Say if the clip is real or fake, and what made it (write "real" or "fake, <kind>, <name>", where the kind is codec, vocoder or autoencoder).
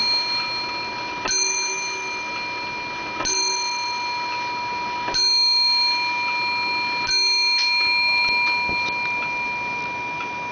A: real